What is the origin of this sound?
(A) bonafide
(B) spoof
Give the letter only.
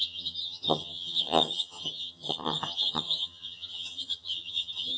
B